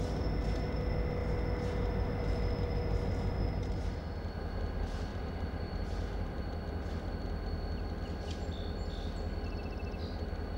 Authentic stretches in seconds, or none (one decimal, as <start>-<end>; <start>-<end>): 0.0-5.1; 6.4-10.6